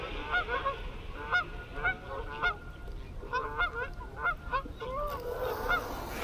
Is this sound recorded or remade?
recorded